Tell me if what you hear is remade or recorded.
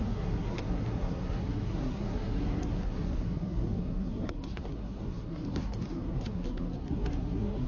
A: remade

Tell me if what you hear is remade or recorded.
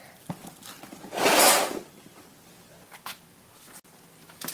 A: recorded